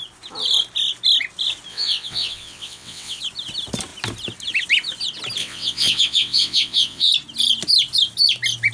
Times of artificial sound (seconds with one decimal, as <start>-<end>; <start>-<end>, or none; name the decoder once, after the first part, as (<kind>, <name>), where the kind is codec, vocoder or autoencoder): 1.7-3.2 (vocoder, WaveNeXt); 5.4-7.1